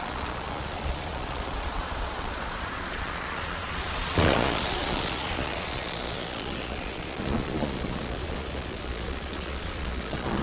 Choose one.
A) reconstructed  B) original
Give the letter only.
A